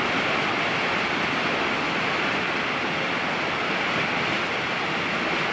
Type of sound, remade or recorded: recorded